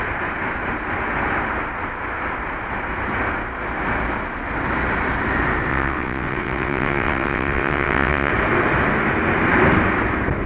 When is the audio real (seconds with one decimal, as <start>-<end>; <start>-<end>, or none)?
0.0-5.7; 8.3-10.5